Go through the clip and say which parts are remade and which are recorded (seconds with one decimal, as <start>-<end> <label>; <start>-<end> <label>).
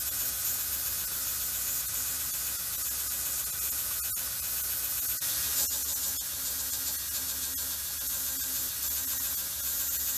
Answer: 0.0-10.2 recorded